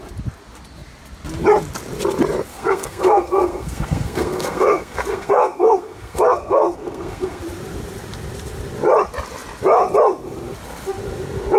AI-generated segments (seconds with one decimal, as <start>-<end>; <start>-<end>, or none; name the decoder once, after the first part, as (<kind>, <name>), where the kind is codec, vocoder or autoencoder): 2.5-7.4 (codec, SNAC)